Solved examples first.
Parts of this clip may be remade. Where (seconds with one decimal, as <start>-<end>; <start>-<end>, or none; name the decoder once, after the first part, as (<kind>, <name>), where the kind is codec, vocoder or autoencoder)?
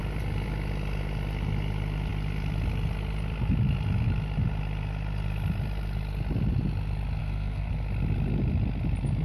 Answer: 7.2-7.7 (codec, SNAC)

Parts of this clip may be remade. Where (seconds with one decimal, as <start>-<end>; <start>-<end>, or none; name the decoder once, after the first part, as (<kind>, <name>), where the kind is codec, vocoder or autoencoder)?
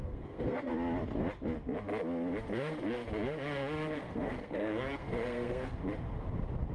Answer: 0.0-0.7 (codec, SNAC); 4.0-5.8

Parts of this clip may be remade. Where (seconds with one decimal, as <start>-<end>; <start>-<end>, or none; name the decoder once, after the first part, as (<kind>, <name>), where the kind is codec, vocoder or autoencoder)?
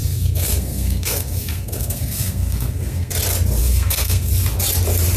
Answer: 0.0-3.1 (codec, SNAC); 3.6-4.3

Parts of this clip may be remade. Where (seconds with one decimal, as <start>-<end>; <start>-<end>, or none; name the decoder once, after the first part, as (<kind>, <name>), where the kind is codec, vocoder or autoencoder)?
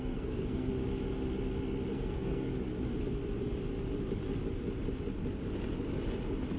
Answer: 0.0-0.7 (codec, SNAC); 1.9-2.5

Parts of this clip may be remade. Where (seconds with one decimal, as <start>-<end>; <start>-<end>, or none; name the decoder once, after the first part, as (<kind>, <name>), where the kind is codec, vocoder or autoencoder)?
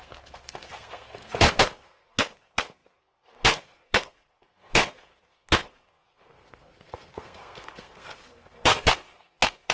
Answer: 0.0-9.7 (codec, SNAC)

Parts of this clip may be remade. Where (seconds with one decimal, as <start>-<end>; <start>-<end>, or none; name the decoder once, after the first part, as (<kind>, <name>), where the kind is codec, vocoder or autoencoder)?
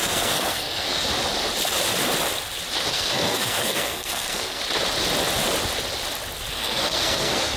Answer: 0.0-1.1 (codec, SNAC); 2.9-4.6; 6.5-7.6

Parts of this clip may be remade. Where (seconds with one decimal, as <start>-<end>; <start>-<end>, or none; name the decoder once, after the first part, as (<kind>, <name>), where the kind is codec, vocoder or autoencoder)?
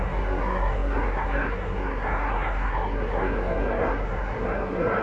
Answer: 0.0-5.0 (codec, SNAC)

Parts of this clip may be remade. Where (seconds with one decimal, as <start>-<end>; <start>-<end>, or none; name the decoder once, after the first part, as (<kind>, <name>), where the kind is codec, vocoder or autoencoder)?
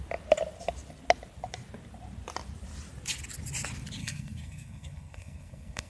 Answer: 4.0-5.9 (codec, SNAC)